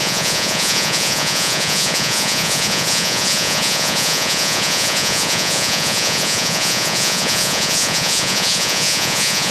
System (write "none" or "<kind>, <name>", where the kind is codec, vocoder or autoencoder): vocoder, Vocos